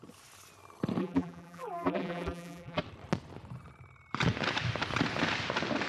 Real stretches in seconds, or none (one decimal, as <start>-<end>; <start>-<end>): 0.0-1.0; 2.8-5.9